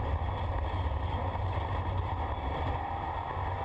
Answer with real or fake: real